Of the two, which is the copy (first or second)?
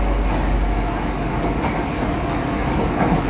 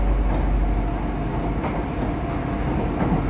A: first